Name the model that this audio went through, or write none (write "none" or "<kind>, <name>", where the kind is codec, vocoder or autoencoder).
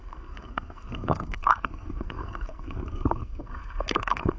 codec, SNAC